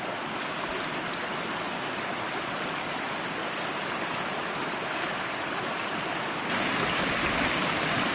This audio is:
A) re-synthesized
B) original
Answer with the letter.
B